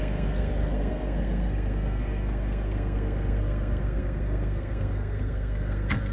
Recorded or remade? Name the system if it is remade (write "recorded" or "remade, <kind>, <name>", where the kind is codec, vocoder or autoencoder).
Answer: remade, codec, SNAC